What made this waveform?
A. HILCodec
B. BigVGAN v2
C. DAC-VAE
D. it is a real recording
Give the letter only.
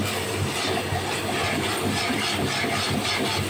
D